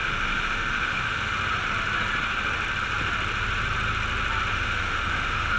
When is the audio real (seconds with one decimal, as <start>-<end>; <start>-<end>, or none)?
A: 1.3-4.5